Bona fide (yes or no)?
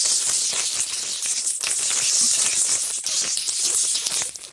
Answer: yes